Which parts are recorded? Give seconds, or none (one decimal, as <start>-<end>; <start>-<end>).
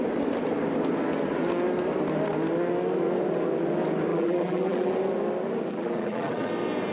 0.0-4.1; 4.9-5.7; 6.5-6.9